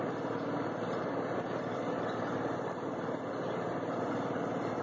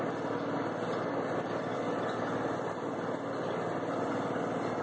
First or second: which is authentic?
second